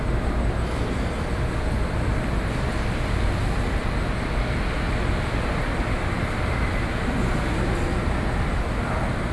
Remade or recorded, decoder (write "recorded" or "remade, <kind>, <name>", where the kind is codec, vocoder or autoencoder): recorded